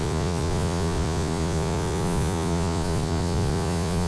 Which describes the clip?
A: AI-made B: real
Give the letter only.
A